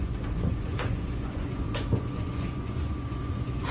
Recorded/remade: remade